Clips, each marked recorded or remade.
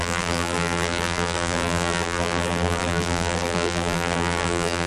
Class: remade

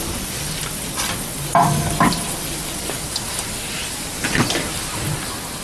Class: recorded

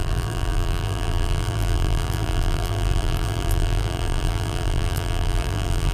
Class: remade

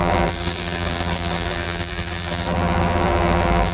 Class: remade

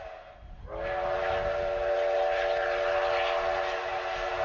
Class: recorded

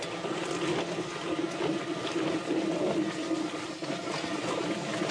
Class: recorded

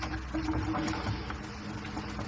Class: recorded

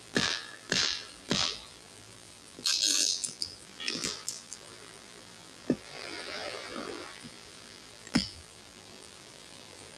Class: remade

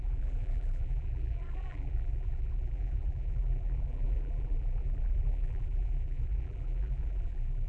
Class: remade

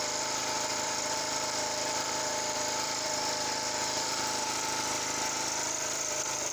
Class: remade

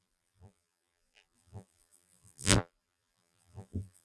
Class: remade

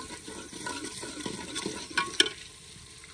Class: recorded